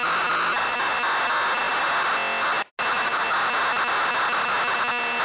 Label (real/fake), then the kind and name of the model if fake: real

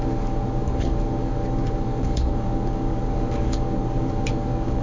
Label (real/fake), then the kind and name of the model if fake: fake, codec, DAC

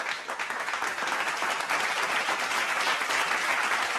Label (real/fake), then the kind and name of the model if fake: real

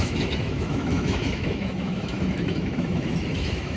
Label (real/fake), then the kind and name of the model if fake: fake, autoencoder, DAC-VAE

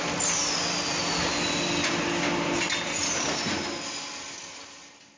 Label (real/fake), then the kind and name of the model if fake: real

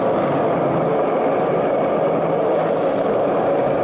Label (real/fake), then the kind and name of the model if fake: real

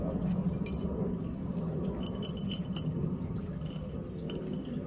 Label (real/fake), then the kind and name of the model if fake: real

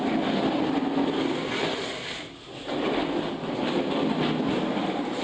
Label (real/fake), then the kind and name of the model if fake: real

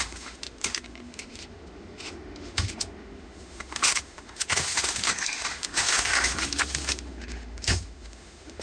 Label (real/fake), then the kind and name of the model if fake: fake, autoencoder, DAC-VAE